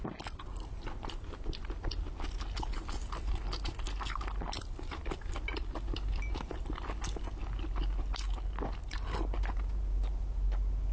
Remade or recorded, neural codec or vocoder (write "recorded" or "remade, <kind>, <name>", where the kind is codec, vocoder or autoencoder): recorded